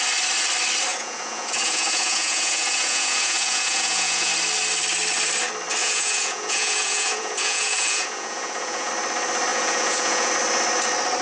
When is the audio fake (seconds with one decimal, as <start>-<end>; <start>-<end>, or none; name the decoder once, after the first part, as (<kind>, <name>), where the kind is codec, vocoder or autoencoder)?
0.9-4.3 (vocoder, Vocos); 5.8-8.9; 9.5-10.3